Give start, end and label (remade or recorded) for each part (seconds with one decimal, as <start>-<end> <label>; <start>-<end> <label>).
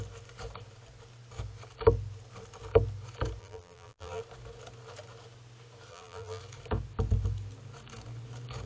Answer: 0.0-3.4 recorded; 3.4-4.2 remade; 4.2-5.9 recorded; 5.9-6.4 remade; 6.4-8.7 recorded